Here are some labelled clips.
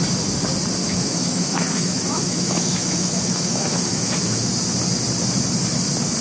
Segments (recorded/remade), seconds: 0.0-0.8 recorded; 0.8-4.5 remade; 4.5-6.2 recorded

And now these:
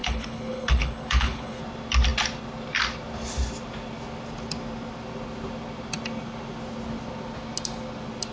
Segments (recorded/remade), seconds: 0.0-1.6 remade; 1.6-8.3 recorded

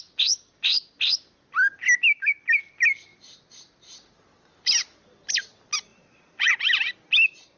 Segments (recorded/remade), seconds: 0.0-5.9 recorded; 5.9-6.5 remade; 6.5-7.6 recorded